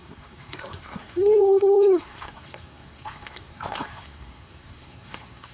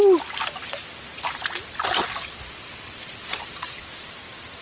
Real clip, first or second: second